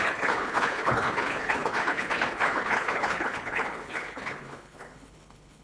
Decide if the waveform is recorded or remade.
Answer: remade